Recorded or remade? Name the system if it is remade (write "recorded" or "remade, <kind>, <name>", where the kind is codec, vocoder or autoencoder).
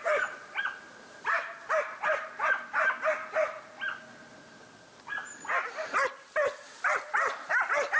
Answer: recorded